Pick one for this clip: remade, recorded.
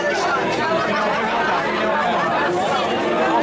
recorded